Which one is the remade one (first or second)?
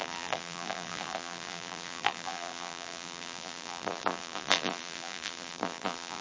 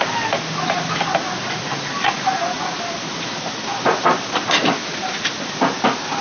first